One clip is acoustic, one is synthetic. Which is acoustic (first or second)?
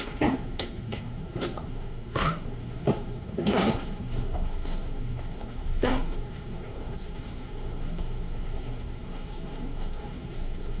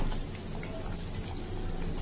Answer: second